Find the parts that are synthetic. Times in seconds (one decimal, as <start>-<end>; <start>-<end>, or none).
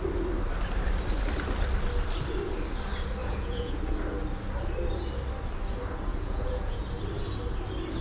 3.2-3.8; 6.1-6.8